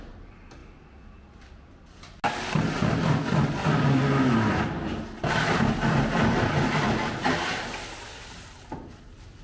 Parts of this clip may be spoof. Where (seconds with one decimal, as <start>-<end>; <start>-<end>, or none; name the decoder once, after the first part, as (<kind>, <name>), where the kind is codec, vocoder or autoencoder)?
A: none